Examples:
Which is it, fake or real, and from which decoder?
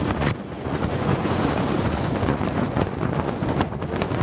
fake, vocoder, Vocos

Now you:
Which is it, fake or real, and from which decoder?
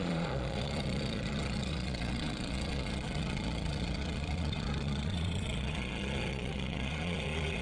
fake, vocoder, Vocos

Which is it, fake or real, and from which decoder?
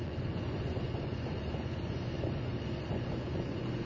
fake, vocoder, Vocos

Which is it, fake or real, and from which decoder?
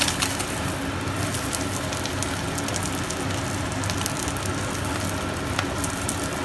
real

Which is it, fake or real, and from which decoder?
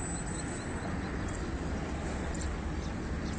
real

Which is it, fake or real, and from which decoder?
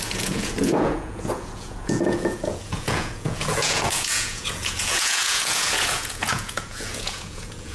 fake, vocoder, Vocos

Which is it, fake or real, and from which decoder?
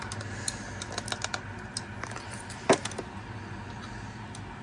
real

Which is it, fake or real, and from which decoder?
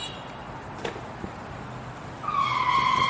real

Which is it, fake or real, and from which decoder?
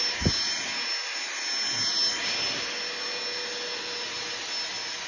real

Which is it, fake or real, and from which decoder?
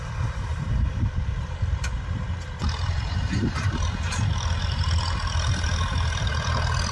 real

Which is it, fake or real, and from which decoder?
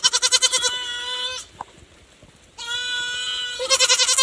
real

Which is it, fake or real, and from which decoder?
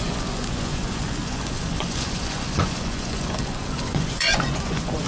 fake, vocoder, Vocos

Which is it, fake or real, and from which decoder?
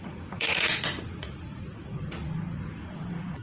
fake, vocoder, Vocos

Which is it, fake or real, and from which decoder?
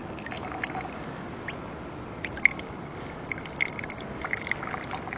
real